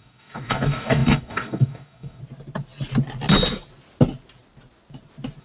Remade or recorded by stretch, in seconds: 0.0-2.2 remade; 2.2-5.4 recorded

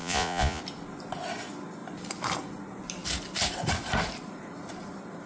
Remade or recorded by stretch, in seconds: 0.0-0.6 remade; 0.6-5.3 recorded

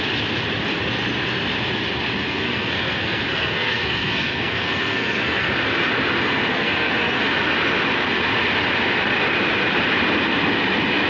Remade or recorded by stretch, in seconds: 0.0-2.2 recorded; 2.2-5.5 remade; 5.5-6.5 recorded; 6.5-7.2 remade; 7.2-11.1 recorded

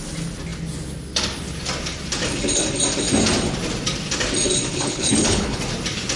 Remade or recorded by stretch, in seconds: 0.0-4.7 recorded; 4.7-5.6 remade; 5.6-6.2 recorded

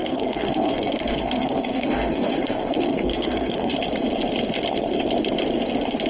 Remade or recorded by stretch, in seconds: 0.0-3.7 remade; 3.7-6.1 recorded

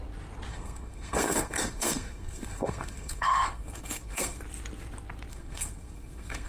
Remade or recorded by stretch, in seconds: 0.0-0.5 recorded; 0.5-4.4 remade; 4.4-5.3 recorded; 5.3-6.5 remade